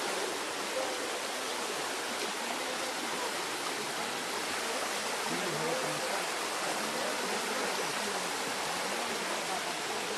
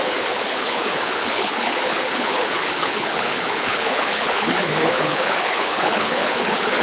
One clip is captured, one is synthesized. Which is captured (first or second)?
first